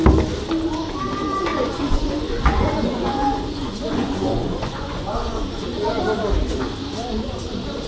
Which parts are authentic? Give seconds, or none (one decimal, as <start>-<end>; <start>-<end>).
0.0-1.5; 6.0-7.9